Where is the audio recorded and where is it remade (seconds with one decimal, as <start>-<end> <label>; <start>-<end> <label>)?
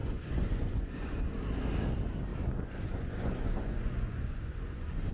0.0-1.3 remade; 1.3-2.3 recorded; 2.3-5.1 remade